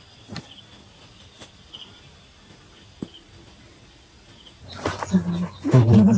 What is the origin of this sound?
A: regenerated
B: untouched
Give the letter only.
B